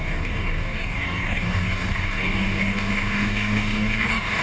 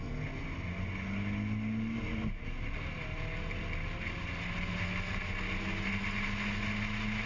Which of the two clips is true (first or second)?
second